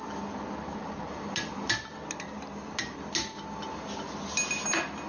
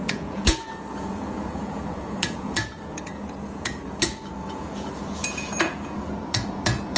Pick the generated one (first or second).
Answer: second